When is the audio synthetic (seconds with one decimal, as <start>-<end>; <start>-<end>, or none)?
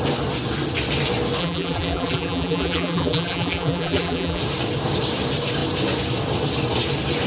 1.4-4.4